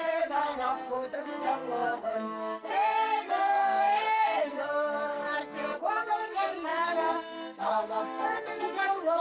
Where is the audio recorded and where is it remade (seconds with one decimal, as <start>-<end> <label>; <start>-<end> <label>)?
0.0-5.2 remade; 5.2-5.9 recorded; 5.9-9.2 remade